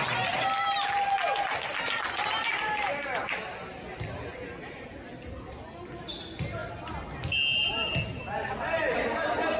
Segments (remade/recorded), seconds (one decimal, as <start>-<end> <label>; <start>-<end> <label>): 0.0-9.6 recorded